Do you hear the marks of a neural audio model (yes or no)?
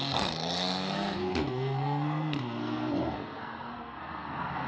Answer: yes